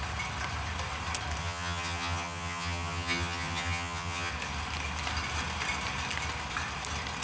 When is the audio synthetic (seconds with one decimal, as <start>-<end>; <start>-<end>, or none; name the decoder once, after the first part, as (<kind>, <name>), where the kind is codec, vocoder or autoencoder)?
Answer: 1.4-4.3 (vocoder, HiFi-GAN)